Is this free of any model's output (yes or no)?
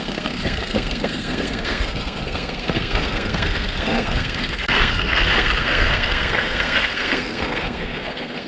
no